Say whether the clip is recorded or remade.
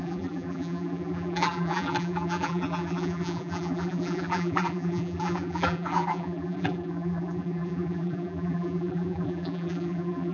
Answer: remade